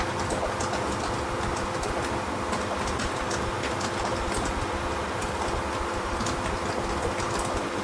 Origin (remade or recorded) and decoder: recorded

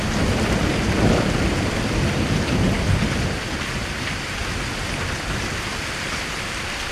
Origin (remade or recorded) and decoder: remade, vocoder, BigVGAN v2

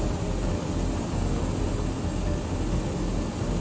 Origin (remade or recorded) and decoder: recorded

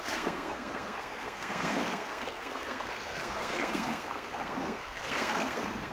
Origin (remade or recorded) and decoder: remade, codec, SNAC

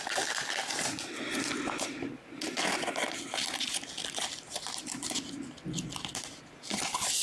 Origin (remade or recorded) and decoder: recorded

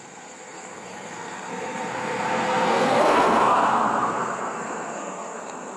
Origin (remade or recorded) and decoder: remade, codec, SNAC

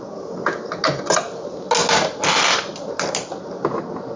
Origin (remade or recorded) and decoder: recorded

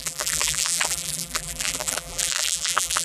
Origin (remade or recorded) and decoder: remade, vocoder, BigVGAN v2